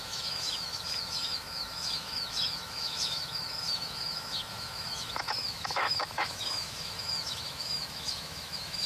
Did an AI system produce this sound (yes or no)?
yes